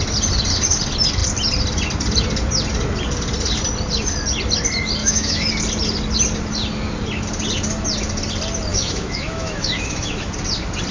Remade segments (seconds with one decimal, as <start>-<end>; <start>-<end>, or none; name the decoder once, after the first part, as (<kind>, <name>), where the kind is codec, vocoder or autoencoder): 5.0-5.5 (autoencoder, DAC-VAE); 8.7-10.3